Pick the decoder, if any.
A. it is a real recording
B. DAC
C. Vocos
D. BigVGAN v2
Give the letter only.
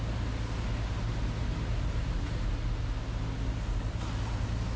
A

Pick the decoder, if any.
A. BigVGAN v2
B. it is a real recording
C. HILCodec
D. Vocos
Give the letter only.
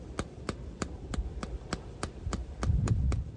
A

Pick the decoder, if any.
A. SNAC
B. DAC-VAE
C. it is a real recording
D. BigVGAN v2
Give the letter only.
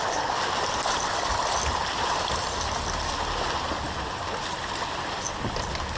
C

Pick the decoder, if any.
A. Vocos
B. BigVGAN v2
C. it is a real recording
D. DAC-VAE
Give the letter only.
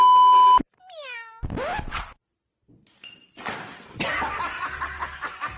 C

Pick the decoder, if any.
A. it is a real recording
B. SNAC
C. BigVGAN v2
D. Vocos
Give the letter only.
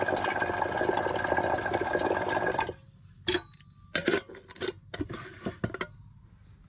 A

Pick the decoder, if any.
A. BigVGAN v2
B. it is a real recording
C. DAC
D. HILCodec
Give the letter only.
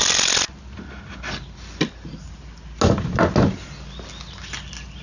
B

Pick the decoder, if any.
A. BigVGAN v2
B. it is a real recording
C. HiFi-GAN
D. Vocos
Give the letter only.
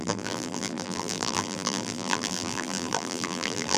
A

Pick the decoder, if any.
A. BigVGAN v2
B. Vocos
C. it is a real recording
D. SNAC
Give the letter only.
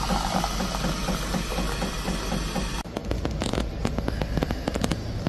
C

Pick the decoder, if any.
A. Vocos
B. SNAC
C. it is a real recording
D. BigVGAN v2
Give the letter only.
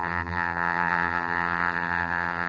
D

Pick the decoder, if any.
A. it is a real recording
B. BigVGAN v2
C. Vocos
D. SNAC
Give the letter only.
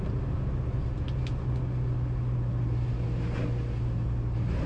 A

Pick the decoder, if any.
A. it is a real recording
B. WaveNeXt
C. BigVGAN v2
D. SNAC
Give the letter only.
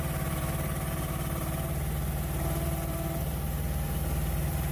C